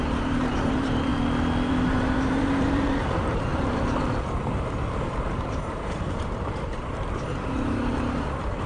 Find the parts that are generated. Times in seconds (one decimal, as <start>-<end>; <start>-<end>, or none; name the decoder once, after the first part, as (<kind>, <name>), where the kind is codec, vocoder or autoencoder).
0.0-1.1 (vocoder, BigVGAN v2); 1.7-3.5; 5.3-8.7